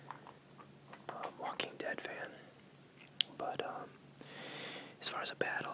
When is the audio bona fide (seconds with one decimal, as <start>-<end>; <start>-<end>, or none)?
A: 0.0-5.7